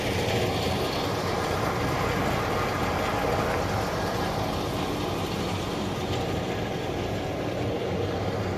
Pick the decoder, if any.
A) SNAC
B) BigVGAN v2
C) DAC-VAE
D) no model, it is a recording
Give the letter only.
D